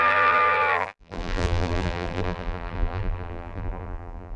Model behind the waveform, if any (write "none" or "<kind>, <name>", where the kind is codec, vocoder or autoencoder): vocoder, BigVGAN v2